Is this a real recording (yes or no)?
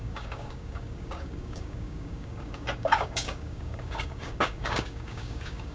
no